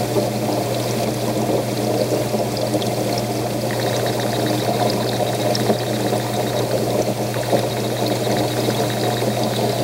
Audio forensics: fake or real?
real